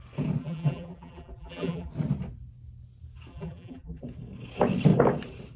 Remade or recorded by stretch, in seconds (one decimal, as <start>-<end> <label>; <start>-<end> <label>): 0.0-0.4 recorded; 0.4-1.9 remade; 1.9-3.3 recorded; 3.3-4.0 remade; 4.0-5.6 recorded